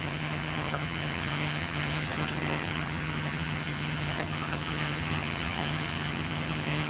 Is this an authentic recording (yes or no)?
no